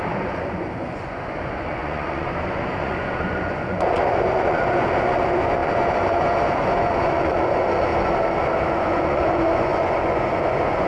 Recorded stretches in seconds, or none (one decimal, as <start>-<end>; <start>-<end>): 7.9-8.7